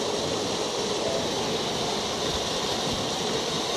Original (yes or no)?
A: yes